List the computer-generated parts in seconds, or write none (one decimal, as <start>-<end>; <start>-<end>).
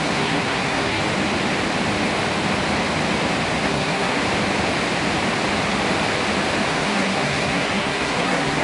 0.0-1.0; 3.6-4.2; 6.7-8.6